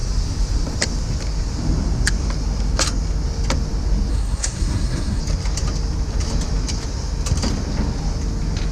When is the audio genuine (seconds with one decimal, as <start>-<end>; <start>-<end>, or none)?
0.0-4.1; 5.2-8.7